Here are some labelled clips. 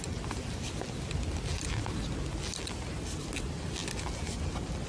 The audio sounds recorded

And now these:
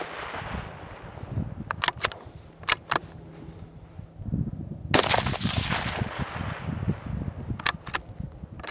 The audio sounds recorded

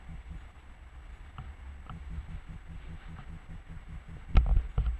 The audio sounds recorded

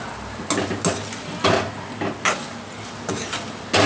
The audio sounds recorded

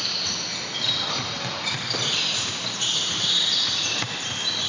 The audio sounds recorded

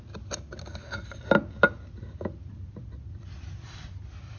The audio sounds recorded